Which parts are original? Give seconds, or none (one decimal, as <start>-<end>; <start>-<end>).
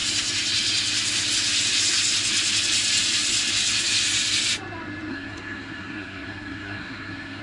0.0-5.1